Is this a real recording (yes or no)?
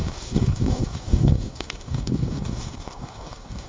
no